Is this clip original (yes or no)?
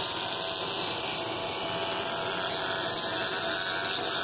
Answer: yes